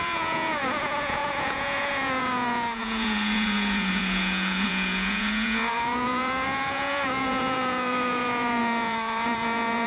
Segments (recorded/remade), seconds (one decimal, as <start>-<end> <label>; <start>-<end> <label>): 0.0-9.9 remade